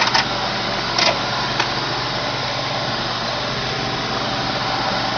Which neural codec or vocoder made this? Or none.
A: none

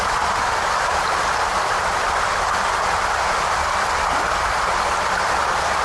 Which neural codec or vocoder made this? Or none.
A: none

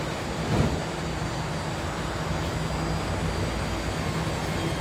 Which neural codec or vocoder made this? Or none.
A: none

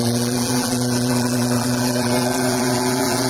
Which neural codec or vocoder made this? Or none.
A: vocoder, BigVGAN v2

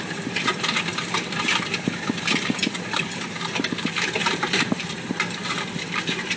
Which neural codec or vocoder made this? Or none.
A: vocoder, BigVGAN v2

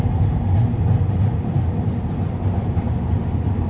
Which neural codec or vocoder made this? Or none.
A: vocoder, BigVGAN v2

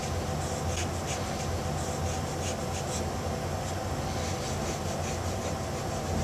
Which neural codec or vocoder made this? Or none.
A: none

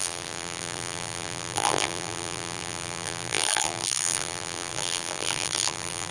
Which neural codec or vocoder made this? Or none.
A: vocoder, BigVGAN v2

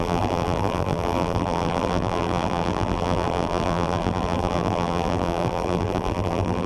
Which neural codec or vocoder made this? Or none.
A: vocoder, BigVGAN v2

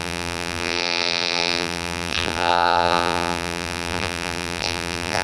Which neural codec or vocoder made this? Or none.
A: vocoder, BigVGAN v2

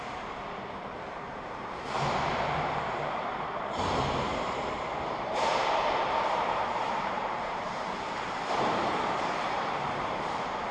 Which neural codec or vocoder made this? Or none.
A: vocoder, BigVGAN v2